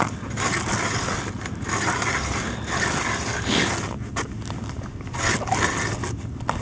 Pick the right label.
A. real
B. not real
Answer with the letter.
A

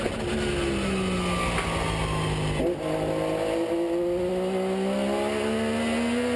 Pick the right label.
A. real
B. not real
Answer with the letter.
A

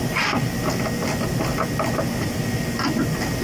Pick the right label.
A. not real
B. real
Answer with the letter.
B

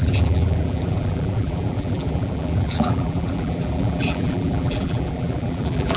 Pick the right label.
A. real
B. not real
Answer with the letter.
B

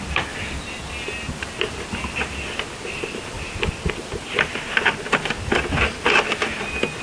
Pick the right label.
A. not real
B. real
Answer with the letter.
B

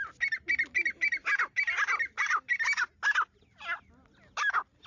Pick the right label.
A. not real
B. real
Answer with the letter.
B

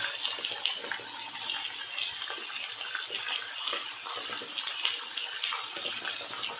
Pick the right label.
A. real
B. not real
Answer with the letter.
A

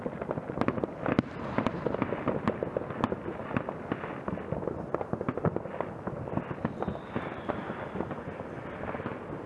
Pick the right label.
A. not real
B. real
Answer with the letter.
B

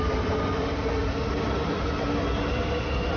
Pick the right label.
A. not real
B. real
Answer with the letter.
B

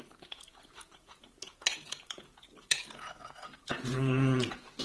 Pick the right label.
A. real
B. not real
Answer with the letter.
B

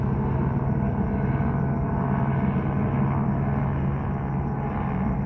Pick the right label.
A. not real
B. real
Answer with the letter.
B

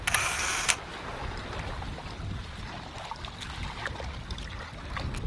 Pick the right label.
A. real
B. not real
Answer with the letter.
A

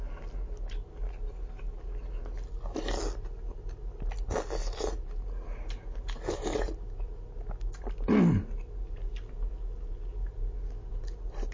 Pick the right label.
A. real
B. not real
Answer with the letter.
A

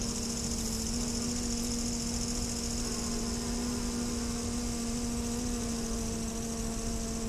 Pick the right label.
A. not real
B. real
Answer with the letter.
B